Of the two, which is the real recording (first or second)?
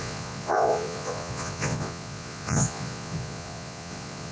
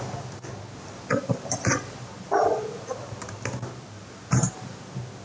second